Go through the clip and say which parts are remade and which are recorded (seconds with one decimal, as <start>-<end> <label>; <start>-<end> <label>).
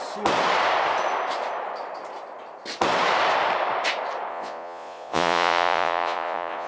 0.0-4.3 recorded; 4.3-6.7 remade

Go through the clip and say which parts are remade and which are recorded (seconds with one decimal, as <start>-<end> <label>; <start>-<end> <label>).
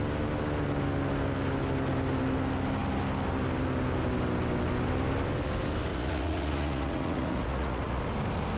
0.0-5.9 recorded; 5.9-8.0 remade; 8.0-8.6 recorded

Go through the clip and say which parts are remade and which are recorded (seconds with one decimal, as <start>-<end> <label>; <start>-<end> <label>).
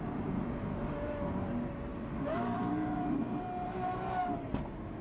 0.0-5.0 remade